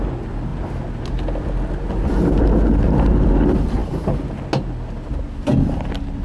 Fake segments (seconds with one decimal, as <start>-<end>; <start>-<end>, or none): none